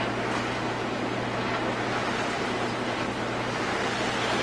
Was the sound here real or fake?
real